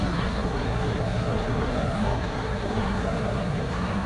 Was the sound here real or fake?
fake